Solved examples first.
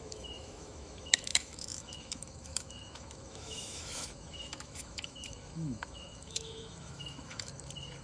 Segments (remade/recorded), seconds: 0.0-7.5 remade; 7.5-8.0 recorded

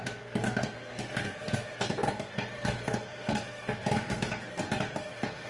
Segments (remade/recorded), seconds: 0.0-5.5 remade

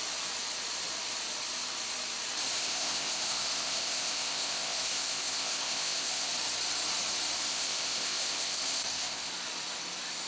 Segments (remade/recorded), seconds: 0.0-2.6 recorded; 2.6-6.3 remade; 6.3-7.5 recorded; 7.5-9.3 remade; 9.3-10.3 recorded

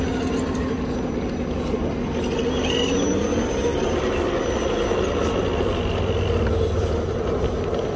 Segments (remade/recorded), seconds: 0.0-3.7 recorded; 3.7-4.7 remade; 4.7-8.0 recorded

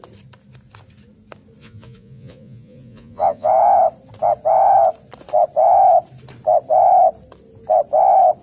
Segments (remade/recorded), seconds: 0.0-1.6 recorded; 1.6-3.5 remade; 3.5-8.4 recorded